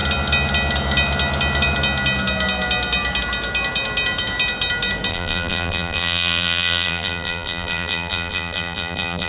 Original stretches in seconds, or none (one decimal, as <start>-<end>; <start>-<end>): 0.0-5.1